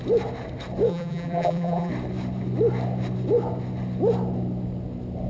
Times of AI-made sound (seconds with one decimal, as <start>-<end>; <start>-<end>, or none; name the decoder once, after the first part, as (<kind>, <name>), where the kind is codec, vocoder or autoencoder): 0.9-1.9 (vocoder, BigVGAN v2)